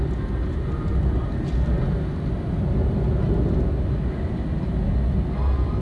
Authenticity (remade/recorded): recorded